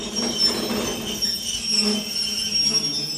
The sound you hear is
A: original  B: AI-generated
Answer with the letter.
A